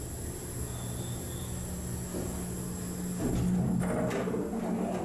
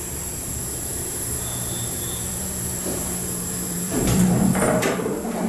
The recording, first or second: first